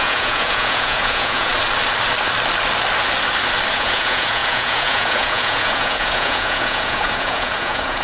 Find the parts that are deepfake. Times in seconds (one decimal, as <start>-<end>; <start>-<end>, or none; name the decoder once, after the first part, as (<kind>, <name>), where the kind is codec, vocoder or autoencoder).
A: 0.0-1.5 (vocoder, Vocos); 3.7-8.0